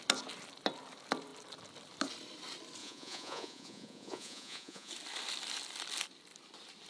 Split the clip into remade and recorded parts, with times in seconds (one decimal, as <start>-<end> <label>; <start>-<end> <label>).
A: 0.0-2.8 recorded; 2.8-4.9 remade; 4.9-6.9 recorded